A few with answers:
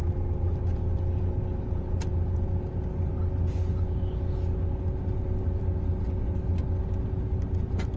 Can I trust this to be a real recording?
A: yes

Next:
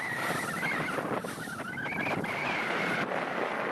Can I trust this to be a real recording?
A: yes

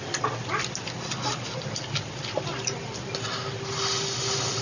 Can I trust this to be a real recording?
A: yes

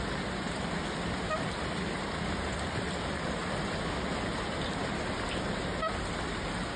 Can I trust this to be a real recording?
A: yes